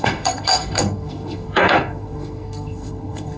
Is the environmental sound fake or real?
fake